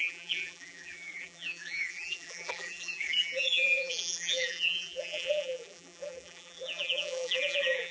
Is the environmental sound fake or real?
fake